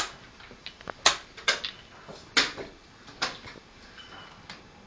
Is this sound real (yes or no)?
yes